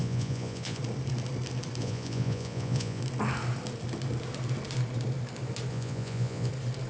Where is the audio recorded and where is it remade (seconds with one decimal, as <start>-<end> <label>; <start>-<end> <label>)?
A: 0.0-0.8 remade; 0.8-1.8 recorded; 1.8-3.0 remade; 3.0-5.7 recorded; 5.7-6.5 remade; 6.5-6.9 recorded